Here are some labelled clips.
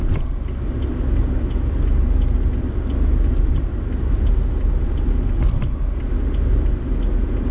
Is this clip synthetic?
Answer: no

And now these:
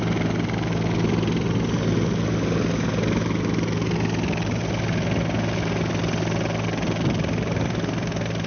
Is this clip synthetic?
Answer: no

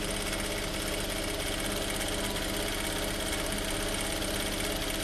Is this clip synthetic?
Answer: no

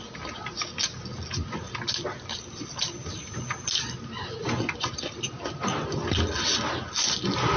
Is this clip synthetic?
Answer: no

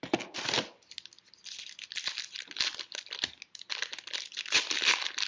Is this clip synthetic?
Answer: no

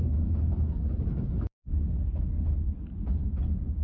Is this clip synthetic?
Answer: no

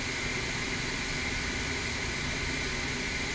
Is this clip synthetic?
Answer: yes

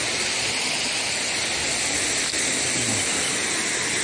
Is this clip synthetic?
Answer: no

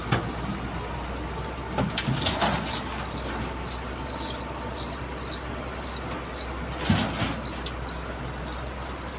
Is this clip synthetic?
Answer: no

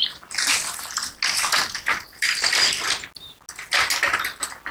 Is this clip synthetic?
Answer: no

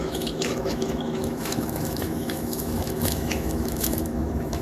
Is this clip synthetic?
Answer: yes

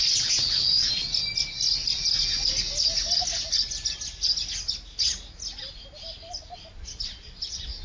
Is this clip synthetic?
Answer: no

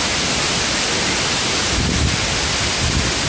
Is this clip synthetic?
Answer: no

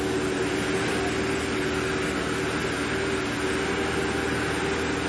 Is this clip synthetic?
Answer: no